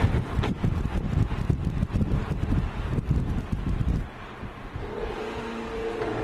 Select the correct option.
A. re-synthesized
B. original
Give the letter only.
B